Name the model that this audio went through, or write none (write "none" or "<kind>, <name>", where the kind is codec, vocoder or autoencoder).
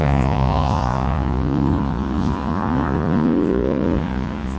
vocoder, Vocos